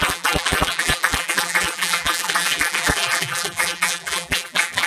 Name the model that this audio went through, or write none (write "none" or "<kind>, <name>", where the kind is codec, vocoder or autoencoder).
vocoder, BigVGAN v2